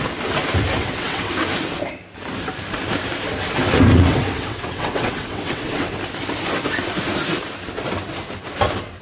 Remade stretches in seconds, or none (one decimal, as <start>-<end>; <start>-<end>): 0.8-1.3; 3.9-6.0